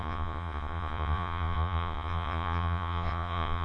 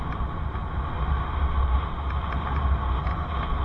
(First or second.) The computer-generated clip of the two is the first